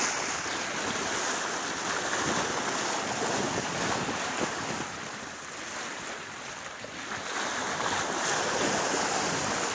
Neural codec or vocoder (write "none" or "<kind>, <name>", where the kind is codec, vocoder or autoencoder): none